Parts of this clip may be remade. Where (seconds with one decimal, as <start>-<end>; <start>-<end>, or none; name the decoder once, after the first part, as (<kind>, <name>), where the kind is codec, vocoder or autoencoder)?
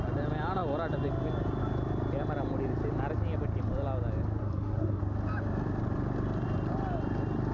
4.4-5.0 (codec, SNAC)